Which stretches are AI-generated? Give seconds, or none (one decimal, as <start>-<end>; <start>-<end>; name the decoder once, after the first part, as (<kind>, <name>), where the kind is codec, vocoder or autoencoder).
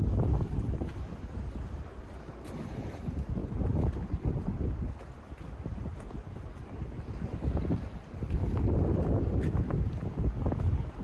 none